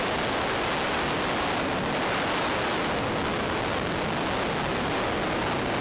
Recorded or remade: recorded